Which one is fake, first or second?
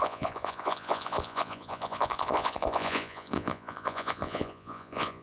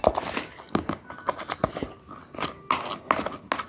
first